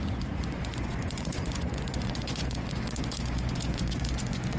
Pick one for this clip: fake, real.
fake